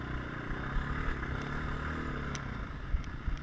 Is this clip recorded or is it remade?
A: recorded